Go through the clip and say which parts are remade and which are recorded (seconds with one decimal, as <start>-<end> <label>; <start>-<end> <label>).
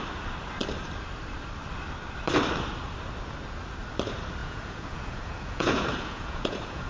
0.0-4.4 recorded; 4.4-6.9 remade